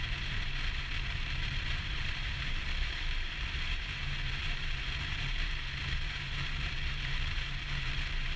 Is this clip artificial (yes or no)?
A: yes